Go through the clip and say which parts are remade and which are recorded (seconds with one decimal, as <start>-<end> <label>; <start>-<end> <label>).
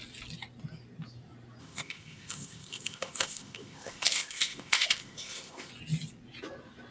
0.0-1.6 recorded; 1.6-5.7 remade; 5.7-6.9 recorded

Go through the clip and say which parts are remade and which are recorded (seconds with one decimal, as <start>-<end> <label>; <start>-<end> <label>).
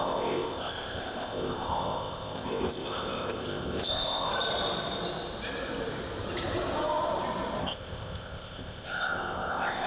0.0-4.3 remade; 4.3-7.6 recorded; 7.6-9.9 remade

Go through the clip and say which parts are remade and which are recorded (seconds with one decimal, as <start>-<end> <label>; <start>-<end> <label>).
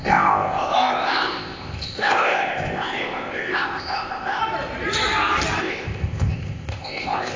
0.0-4.4 remade; 4.4-5.6 recorded; 5.6-7.4 remade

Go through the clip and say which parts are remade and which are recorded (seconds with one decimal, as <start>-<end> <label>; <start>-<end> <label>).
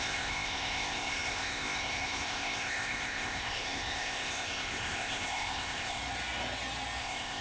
0.0-6.0 remade; 6.0-7.0 recorded; 7.0-7.4 remade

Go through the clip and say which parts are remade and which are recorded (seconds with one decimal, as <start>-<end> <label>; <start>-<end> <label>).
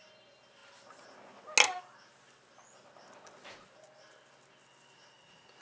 0.0-5.6 recorded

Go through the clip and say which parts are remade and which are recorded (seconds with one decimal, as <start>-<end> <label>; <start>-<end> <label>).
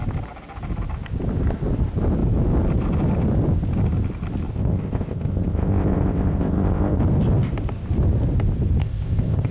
0.0-4.5 recorded; 4.5-7.0 remade; 7.0-8.8 recorded; 8.8-9.5 remade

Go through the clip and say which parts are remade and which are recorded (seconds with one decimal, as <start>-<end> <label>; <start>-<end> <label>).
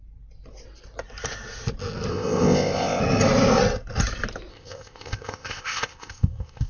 0.0-2.1 recorded; 2.1-3.0 remade; 3.0-4.5 recorded; 4.5-6.7 remade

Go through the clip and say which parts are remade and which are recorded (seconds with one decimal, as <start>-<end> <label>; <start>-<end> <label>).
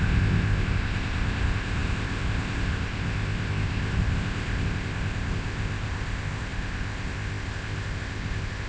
0.0-8.7 remade